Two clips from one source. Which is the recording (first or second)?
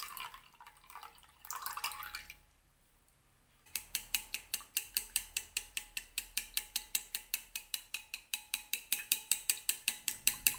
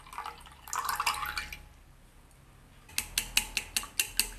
second